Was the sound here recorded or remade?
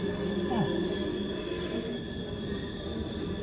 recorded